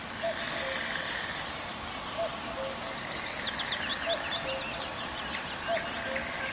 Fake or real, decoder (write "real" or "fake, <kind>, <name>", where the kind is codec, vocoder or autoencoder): real